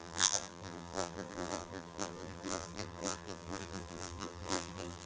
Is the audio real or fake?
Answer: fake